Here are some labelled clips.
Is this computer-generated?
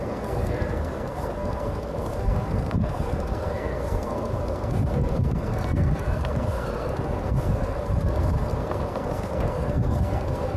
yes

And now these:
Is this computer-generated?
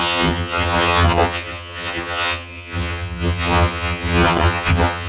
yes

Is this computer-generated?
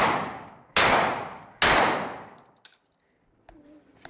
no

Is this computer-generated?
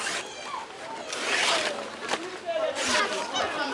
no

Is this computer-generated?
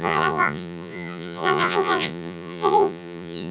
yes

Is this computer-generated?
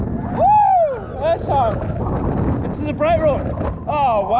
no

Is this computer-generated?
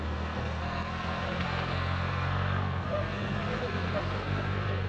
yes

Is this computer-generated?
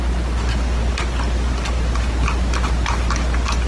no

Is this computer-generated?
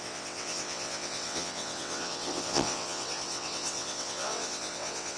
yes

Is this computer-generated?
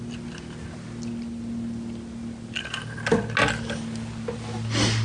no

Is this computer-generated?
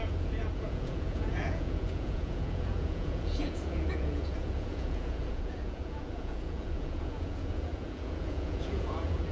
yes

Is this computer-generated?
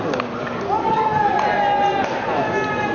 no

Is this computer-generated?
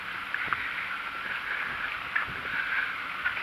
no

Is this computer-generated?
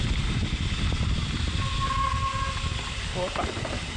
no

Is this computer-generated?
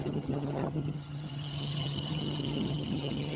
yes